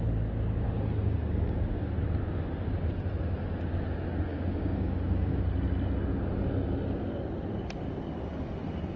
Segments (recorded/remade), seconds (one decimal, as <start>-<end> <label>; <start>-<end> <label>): 0.0-1.0 recorded; 1.0-1.9 remade; 1.9-4.3 recorded; 4.3-5.4 remade; 5.4-9.0 recorded